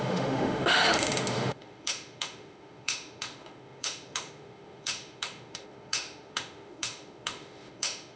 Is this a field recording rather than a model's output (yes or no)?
no